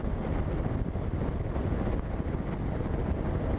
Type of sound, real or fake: fake